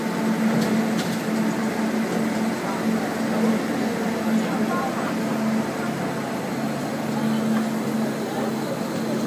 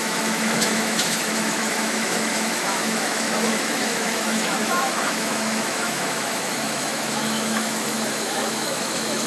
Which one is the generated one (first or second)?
second